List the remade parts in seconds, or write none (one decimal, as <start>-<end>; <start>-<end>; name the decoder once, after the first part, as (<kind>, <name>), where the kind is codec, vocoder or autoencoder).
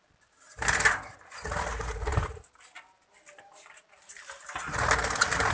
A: none